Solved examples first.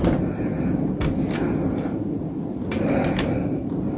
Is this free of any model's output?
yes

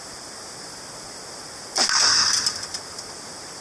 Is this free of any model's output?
yes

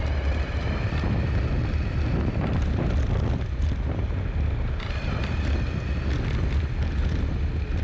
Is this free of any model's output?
yes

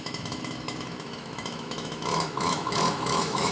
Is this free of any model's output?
no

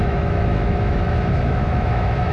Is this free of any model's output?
no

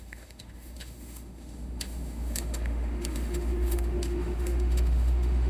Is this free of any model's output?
no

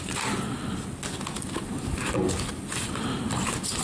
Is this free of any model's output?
yes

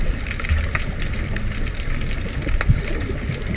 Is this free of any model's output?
yes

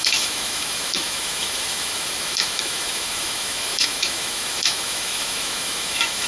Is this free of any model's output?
no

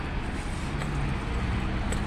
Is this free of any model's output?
yes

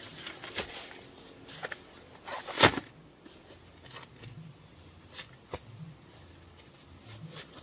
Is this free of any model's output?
yes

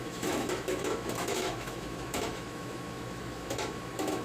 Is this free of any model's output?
no